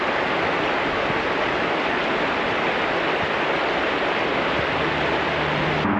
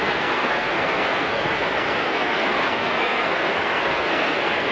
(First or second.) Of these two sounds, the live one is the first